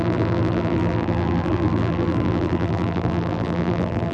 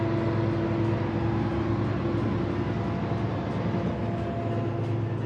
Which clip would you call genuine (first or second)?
second